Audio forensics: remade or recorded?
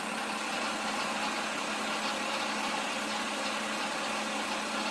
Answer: recorded